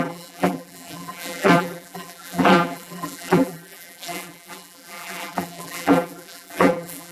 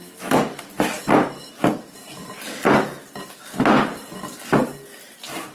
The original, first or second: second